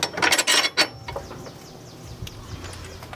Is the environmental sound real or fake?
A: real